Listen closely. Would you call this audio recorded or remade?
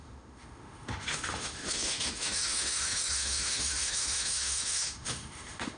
remade